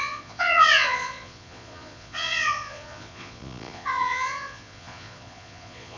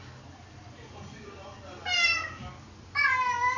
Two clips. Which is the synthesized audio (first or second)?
first